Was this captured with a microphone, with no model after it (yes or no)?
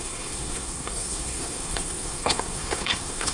no